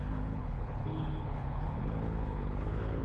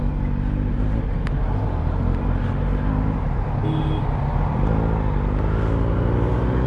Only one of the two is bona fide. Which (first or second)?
second